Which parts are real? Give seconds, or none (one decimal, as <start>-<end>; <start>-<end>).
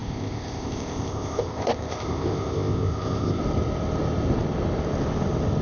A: 3.4-5.6